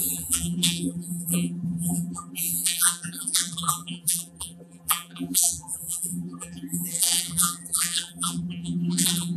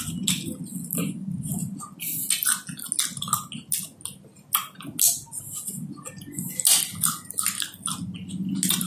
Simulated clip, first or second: first